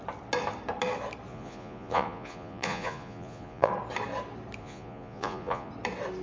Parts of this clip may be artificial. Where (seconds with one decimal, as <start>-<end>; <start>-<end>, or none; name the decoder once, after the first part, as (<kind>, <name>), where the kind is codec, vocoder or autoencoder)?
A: 1.3-3.7 (vocoder, Vocos); 4.6-5.7